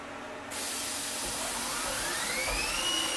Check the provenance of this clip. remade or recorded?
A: recorded